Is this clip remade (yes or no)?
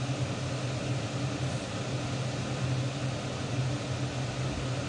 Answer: no